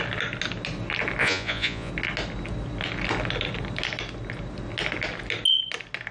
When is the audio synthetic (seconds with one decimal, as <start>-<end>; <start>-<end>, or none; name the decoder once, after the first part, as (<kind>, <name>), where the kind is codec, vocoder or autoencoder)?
1.2-1.9 (vocoder, Vocos)